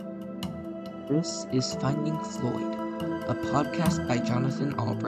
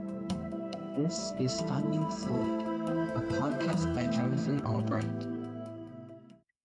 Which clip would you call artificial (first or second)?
second